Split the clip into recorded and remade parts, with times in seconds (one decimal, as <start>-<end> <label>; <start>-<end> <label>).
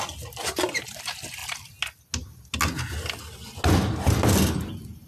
0.0-5.1 recorded